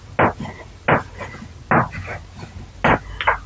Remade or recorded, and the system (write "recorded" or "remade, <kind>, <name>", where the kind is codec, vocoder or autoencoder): recorded